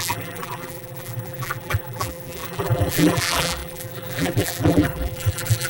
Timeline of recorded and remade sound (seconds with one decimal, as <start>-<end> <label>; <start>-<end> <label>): 0.0-5.7 remade